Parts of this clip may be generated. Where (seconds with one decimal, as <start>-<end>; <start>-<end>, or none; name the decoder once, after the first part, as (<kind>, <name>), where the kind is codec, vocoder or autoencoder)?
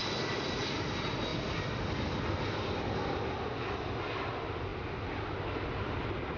none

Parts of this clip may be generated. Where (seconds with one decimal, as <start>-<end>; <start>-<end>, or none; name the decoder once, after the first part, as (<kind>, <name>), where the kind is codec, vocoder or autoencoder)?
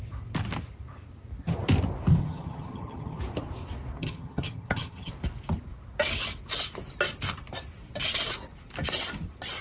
2.2-3.2 (vocoder, HiFi-GAN); 4.0-5.1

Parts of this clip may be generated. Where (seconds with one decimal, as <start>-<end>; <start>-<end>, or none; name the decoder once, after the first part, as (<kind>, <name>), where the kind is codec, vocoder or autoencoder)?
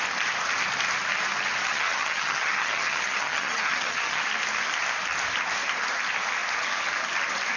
1.7-4.2 (vocoder, HiFi-GAN)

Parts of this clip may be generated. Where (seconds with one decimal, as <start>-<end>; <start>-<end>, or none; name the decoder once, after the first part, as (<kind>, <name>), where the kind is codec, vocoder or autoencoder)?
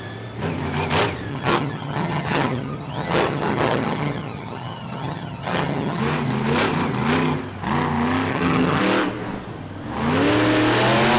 1.3-6.0 (vocoder, HiFi-GAN); 8.3-8.8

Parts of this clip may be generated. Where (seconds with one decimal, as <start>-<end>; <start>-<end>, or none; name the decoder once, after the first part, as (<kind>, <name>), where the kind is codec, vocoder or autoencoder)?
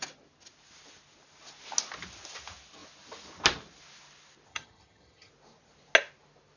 4.5-5.3 (vocoder, HiFi-GAN)